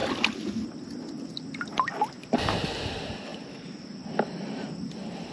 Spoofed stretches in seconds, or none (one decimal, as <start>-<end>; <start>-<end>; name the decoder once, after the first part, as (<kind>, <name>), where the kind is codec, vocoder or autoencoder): 2.6-3.3 (vocoder, BigVGAN v2)